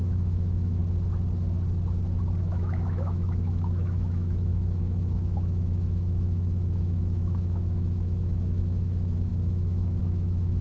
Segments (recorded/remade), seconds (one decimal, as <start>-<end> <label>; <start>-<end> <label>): 0.0-0.8 remade; 0.8-2.4 recorded; 2.4-10.6 remade

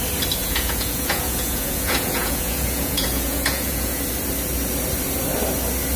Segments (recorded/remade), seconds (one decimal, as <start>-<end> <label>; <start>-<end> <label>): 0.0-0.4 recorded; 0.4-4.0 remade; 4.0-6.0 recorded

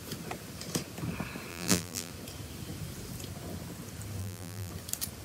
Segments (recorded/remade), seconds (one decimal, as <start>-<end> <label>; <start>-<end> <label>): 0.0-1.5 recorded; 1.5-2.1 remade; 2.1-4.2 recorded; 4.2-4.7 remade; 4.7-5.2 recorded

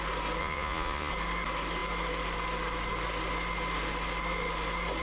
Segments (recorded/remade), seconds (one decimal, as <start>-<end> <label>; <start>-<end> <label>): 0.0-0.4 recorded; 0.4-1.1 remade; 1.1-5.0 recorded

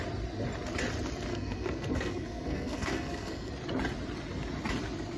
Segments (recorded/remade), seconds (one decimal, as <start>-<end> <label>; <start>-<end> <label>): 0.0-1.3 recorded; 1.3-3.5 remade; 3.5-5.2 recorded

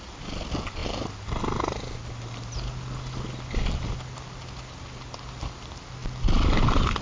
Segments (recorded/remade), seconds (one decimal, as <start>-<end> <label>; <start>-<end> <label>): 0.0-7.0 recorded

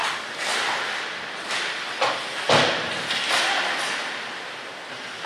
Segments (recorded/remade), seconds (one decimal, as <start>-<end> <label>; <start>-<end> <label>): 0.0-5.3 recorded

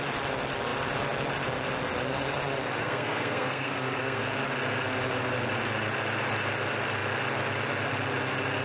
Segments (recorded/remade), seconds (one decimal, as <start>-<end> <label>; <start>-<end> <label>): 0.0-2.8 recorded; 2.8-4.2 remade; 4.2-8.6 recorded